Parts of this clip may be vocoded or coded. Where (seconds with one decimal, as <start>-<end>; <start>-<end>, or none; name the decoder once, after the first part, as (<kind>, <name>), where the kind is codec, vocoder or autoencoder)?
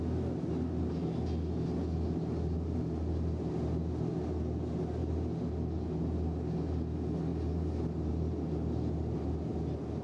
none